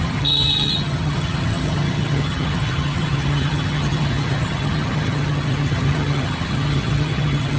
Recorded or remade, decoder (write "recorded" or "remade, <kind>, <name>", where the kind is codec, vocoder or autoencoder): remade, vocoder, HiFi-GAN